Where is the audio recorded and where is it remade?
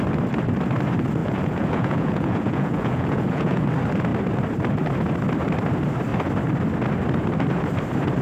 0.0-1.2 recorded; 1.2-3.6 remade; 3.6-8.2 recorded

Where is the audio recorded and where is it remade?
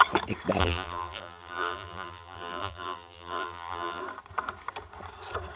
0.0-0.6 recorded; 0.6-4.0 remade; 4.0-5.6 recorded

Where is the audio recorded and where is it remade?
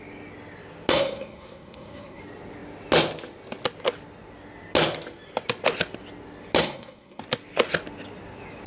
0.0-0.9 recorded; 0.9-2.2 remade; 2.2-6.6 recorded; 6.6-7.2 remade; 7.2-8.7 recorded